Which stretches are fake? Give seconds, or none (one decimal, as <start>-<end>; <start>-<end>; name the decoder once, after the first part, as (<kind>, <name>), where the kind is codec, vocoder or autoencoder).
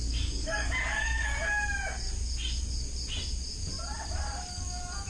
0.0-1.4 (codec, DAC); 4.5-5.1